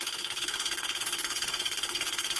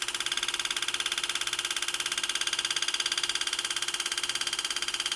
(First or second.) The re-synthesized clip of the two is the first